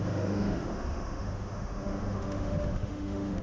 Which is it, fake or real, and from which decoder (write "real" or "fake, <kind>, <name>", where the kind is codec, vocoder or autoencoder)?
fake, autoencoder, DAC-VAE